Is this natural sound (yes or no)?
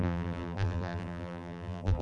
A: no